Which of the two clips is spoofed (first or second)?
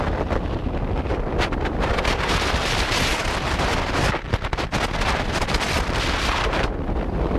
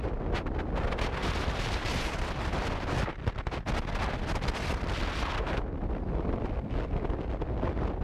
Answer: first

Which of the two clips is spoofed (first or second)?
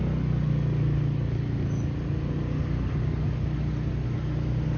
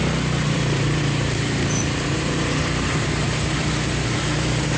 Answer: second